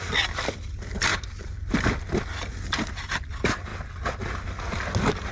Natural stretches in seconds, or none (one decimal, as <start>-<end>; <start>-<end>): 0.0-5.3